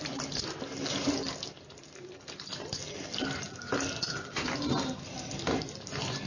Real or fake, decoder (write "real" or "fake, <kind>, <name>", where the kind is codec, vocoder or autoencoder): real